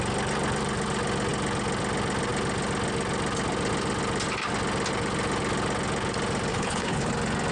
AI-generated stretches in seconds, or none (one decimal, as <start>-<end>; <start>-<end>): 6.5-7.1